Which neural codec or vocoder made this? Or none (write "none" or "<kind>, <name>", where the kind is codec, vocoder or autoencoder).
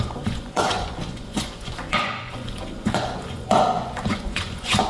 vocoder, Vocos